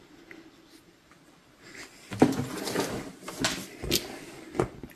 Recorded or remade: recorded